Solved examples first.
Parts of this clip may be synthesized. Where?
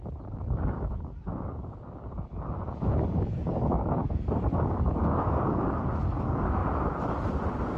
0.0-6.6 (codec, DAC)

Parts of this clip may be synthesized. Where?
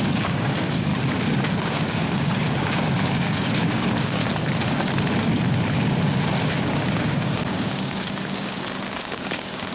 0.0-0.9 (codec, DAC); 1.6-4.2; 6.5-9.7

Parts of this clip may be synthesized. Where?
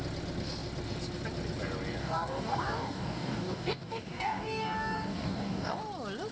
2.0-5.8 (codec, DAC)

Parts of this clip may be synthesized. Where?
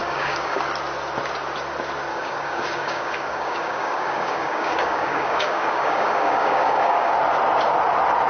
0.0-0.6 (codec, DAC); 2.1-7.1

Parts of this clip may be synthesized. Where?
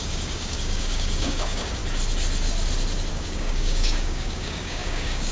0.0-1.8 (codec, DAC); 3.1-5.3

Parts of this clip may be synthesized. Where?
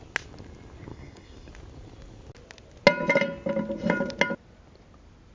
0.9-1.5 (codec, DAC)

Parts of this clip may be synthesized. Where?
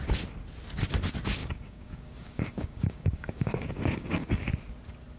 1.4-4.5 (codec, DAC)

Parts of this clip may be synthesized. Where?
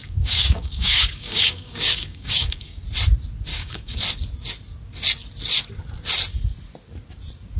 0.0-2.8 (codec, DAC); 3.5-4.0